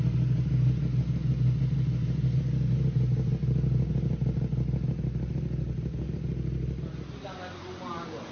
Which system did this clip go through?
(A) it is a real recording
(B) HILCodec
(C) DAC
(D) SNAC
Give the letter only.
A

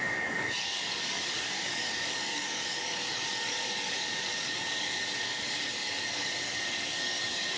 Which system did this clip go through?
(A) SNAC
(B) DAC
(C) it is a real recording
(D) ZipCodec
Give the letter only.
B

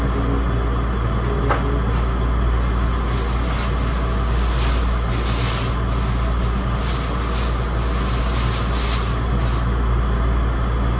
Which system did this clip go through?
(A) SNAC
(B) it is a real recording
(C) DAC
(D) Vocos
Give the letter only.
B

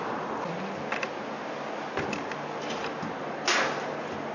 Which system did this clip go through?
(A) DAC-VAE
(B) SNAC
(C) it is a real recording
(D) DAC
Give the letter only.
C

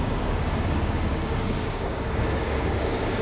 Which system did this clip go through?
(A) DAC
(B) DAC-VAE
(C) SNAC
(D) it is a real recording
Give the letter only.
A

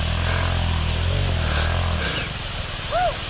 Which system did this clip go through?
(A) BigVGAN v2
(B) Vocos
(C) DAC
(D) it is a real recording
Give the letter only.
D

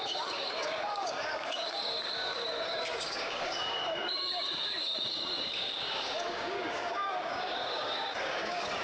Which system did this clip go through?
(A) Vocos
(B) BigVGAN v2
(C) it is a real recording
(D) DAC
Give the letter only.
D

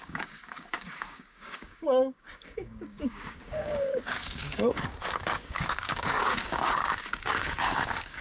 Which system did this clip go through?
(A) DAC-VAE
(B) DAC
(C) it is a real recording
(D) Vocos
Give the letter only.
B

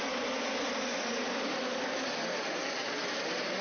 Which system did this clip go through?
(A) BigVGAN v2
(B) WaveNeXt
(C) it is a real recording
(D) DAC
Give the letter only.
C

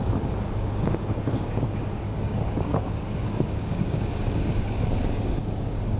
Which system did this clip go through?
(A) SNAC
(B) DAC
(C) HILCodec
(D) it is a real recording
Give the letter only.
B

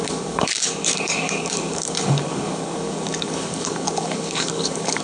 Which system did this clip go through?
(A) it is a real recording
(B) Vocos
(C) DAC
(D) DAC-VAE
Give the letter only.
C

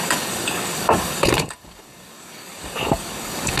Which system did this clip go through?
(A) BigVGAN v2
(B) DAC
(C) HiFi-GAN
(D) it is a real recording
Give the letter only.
B